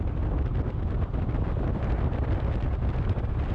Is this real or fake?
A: real